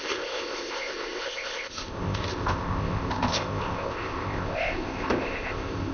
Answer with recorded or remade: remade